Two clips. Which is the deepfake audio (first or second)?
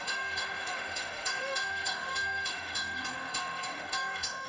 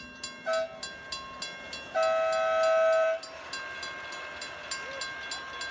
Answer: first